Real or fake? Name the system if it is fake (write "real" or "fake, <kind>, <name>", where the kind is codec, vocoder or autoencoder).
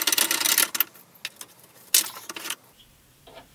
real